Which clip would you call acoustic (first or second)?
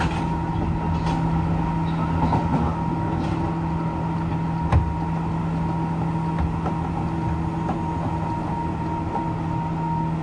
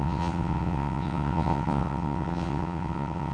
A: first